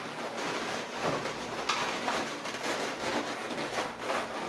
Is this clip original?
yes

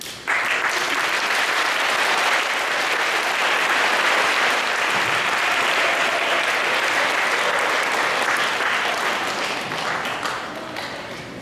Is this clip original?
yes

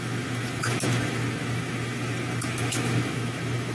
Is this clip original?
no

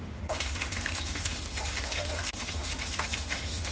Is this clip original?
no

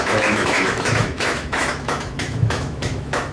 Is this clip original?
no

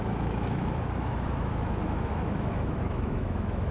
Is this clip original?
no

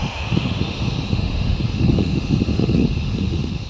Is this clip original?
no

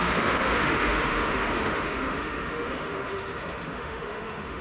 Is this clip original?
no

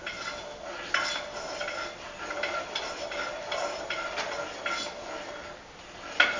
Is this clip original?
yes